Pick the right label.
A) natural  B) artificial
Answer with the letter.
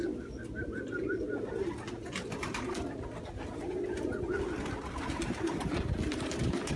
A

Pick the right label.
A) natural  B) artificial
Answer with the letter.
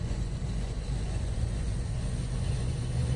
B